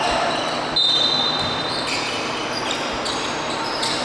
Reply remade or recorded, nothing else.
recorded